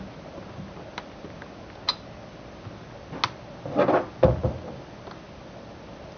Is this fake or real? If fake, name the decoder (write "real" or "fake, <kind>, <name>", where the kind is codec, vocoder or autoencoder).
real